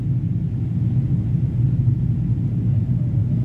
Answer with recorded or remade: recorded